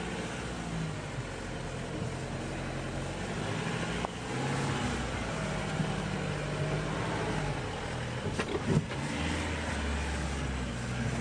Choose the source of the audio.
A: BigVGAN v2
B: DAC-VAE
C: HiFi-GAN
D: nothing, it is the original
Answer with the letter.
D